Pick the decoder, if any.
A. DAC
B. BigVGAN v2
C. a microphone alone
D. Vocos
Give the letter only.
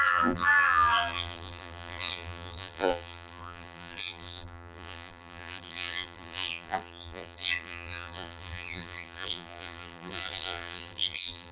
B